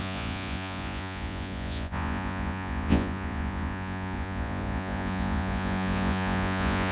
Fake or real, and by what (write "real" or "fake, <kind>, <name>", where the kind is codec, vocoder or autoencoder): fake, vocoder, Vocos